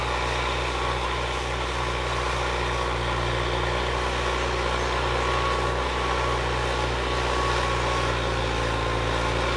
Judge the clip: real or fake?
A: real